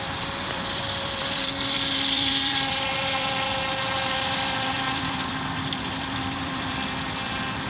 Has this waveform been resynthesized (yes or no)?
yes